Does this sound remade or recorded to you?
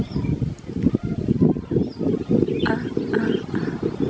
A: recorded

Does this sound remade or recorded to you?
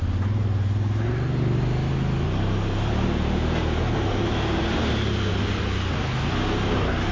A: recorded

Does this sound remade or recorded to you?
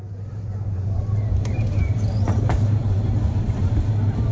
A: remade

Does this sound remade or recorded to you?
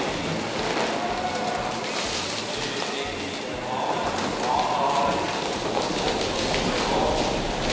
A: recorded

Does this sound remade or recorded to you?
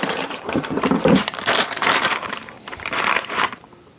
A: remade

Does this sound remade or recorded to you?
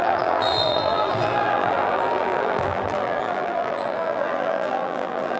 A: remade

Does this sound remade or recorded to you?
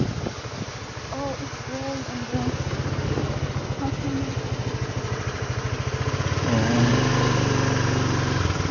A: recorded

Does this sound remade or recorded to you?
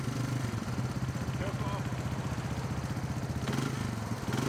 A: recorded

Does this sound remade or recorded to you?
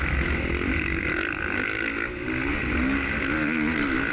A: recorded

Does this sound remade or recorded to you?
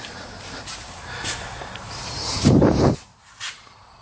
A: remade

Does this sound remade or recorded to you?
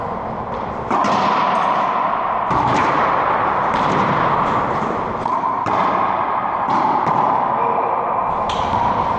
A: remade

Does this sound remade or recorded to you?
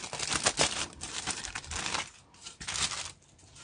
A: recorded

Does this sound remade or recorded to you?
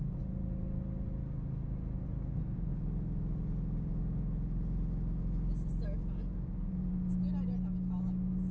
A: recorded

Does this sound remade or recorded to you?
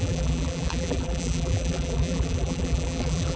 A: remade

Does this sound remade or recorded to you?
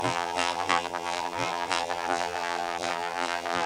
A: remade